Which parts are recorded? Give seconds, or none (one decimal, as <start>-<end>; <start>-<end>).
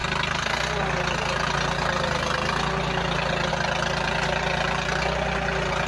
0.0-5.9